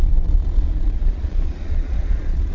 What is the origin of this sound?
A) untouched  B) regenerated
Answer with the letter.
B